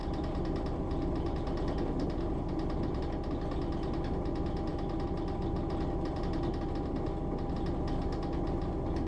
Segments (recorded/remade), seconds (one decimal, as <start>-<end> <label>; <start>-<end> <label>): 0.0-3.0 remade; 3.0-4.7 recorded; 4.7-6.4 remade; 6.4-9.1 recorded